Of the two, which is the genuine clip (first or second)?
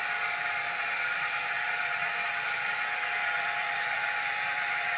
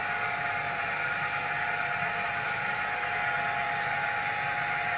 second